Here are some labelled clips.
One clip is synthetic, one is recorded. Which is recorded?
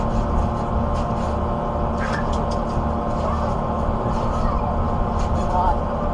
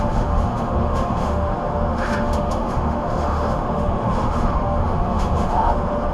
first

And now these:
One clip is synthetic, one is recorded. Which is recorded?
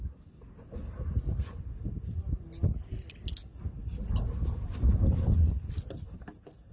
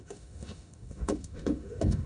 first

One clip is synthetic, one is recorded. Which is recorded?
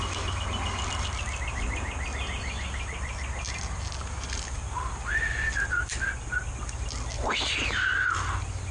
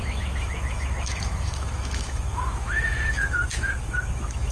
first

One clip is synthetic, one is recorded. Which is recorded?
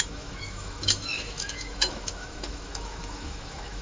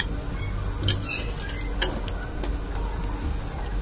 second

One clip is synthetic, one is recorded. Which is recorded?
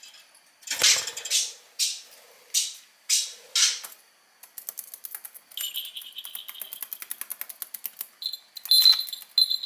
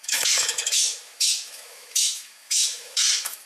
first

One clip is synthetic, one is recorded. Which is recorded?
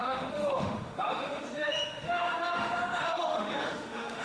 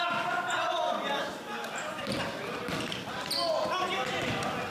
second